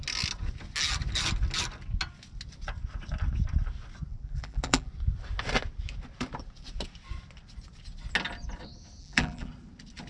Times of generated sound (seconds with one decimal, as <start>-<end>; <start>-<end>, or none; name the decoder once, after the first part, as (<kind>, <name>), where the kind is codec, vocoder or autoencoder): 4.1-4.9 (vocoder, BigVGAN v2); 9.0-9.5